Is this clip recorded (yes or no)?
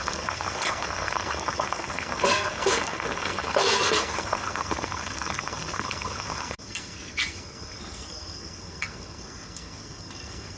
no